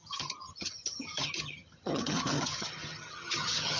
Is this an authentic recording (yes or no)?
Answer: no